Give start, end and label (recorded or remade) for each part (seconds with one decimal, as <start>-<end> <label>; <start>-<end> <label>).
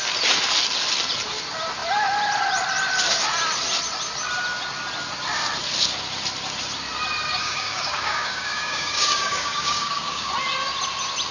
0.0-7.4 recorded; 7.4-10.3 remade; 10.3-11.3 recorded